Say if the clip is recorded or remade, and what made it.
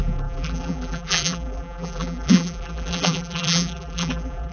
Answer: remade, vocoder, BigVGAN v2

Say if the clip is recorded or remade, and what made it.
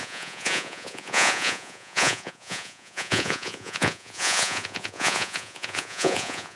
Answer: remade, vocoder, Vocos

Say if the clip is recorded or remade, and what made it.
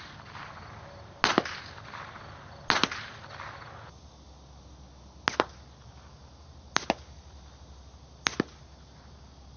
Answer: recorded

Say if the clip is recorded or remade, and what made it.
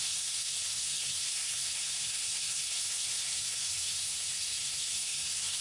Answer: remade, codec, SNAC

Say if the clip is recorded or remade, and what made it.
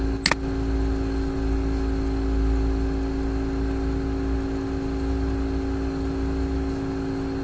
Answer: recorded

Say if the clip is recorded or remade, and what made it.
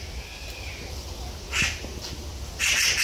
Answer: recorded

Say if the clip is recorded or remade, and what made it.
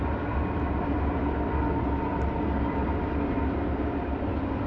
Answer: recorded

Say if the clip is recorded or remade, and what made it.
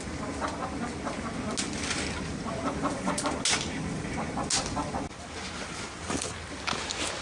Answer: recorded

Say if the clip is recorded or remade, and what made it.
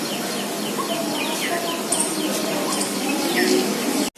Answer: recorded